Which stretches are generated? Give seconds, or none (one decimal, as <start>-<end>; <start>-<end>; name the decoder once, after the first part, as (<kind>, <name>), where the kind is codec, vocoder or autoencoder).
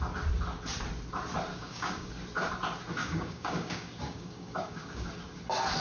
1.5-2.1 (codec, DAC); 3.0-5.1